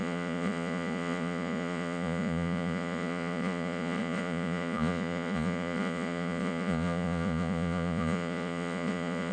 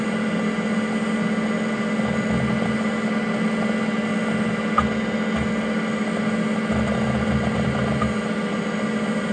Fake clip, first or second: first